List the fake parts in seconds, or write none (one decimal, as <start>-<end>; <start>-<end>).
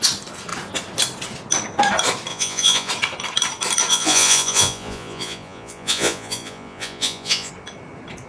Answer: 2.3-2.9; 3.9-7.5